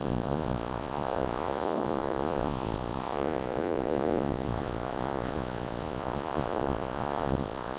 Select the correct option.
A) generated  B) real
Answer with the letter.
A